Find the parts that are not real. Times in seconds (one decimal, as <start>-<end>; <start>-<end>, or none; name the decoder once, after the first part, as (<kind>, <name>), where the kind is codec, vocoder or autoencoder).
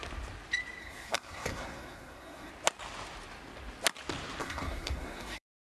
0.8-2.5 (codec, SNAC); 4.4-5.7